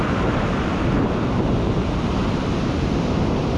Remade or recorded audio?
remade